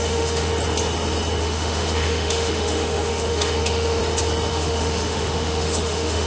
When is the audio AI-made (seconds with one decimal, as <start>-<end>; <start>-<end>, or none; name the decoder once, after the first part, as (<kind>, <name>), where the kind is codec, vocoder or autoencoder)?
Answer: 0.0-0.5 (autoencoder, DAC-VAE); 1.4-4.0; 4.5-6.3

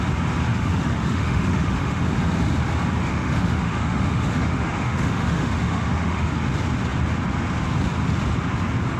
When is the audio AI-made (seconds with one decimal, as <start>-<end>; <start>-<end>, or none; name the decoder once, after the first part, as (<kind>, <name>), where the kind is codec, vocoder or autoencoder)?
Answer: 0.5-2.0 (autoencoder, DAC-VAE); 3.0-6.3

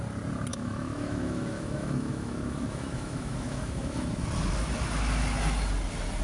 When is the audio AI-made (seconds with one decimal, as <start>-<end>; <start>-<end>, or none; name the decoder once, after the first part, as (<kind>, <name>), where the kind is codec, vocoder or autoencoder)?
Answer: 0.5-4.2 (autoencoder, DAC-VAE)

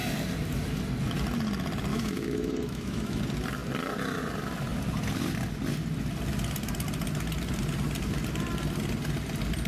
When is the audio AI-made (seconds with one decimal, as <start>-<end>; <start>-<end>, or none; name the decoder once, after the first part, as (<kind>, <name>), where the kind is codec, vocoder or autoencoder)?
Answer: 1.9-3.2 (autoencoder, DAC-VAE)

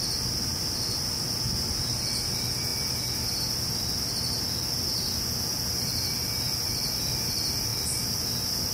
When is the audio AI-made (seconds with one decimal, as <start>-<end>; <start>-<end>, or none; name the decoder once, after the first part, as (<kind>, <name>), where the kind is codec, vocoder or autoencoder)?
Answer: none